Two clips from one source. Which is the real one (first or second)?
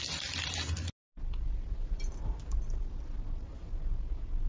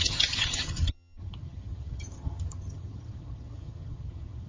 first